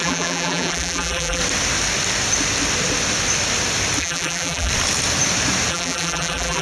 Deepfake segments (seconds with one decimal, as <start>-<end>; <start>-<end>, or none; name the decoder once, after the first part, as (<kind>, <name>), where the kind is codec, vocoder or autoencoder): 0.0-1.4 (vocoder, BigVGAN v2); 4.0-4.7; 5.7-6.6